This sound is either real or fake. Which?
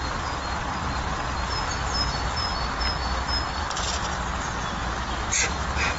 real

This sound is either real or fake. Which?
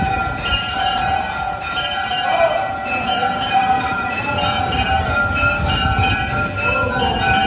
fake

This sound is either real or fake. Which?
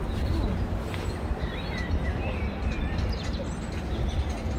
real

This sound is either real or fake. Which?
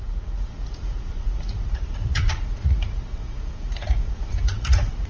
fake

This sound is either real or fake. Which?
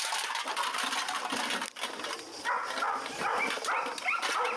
real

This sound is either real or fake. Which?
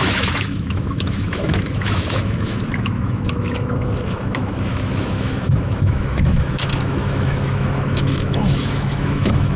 fake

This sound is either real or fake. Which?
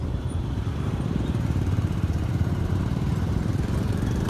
fake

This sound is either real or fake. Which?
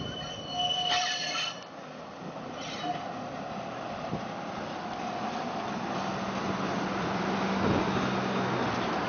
real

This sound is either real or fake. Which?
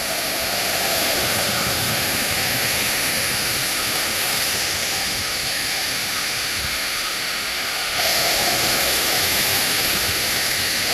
fake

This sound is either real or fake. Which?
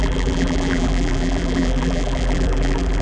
fake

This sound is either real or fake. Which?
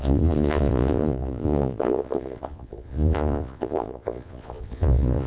fake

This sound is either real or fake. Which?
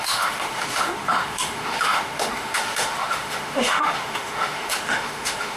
fake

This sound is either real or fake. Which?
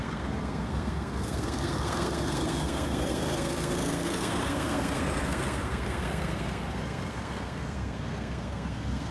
fake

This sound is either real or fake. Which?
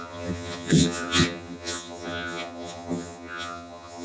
fake